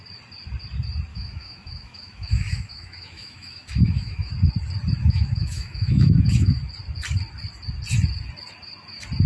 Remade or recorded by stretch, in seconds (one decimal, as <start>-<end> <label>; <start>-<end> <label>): 0.0-1.1 recorded; 1.1-4.3 remade; 4.3-5.0 recorded; 5.0-6.6 remade; 6.6-9.3 recorded